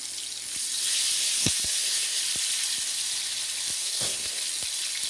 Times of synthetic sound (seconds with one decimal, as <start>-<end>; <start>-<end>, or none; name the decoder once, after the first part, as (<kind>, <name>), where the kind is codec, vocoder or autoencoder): 1.2-2.2 (codec, SNAC); 3.8-4.4